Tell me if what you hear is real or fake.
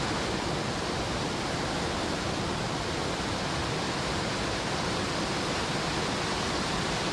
real